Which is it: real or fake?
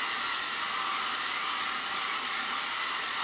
real